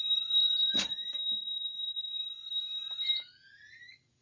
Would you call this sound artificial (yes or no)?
yes